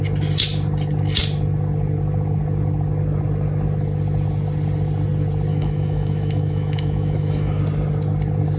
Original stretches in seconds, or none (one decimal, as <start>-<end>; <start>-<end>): 0.0-5.5; 7.6-8.6